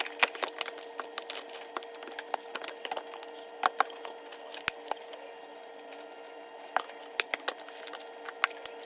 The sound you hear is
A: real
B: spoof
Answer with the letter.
A